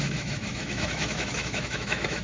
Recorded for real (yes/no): no